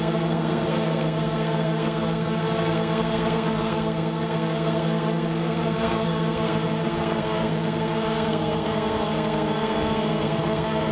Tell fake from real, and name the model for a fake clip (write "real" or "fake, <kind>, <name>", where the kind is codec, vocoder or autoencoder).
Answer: fake, codec, SNAC